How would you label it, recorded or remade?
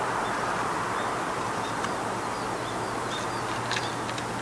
recorded